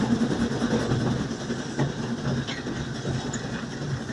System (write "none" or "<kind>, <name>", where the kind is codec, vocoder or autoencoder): none